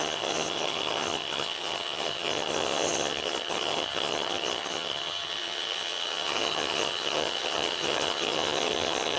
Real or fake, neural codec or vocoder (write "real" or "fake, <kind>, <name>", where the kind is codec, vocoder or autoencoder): fake, vocoder, HiFi-GAN